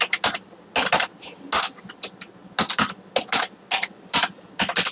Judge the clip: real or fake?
real